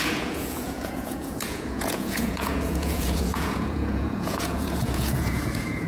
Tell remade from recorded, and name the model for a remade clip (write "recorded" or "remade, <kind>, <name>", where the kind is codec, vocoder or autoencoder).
remade, vocoder, Vocos